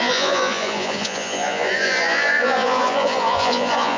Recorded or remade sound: remade